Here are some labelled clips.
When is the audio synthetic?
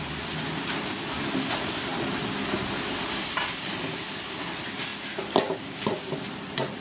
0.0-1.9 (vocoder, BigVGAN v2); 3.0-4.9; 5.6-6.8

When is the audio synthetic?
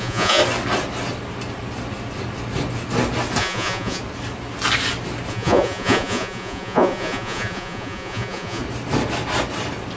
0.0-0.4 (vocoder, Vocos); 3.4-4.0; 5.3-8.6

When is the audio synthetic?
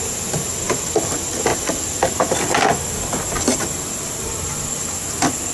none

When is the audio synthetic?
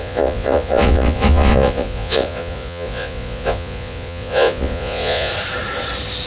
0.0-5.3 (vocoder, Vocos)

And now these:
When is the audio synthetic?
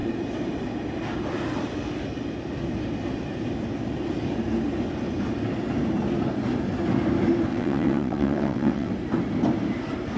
7.5-8.9 (vocoder, WaveNeXt)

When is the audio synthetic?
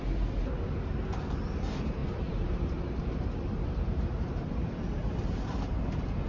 2.0-5.8 (vocoder, BigVGAN v2)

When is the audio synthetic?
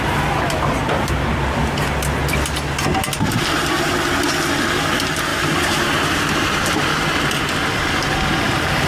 5.3-6.2 (vocoder, BigVGAN v2)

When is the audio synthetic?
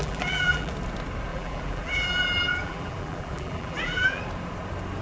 0.0-0.7 (vocoder, BigVGAN v2); 1.3-4.2